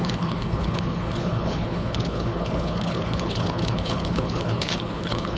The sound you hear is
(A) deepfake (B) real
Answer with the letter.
A